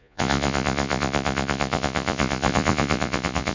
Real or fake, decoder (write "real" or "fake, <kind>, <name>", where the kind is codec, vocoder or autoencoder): fake, vocoder, Vocos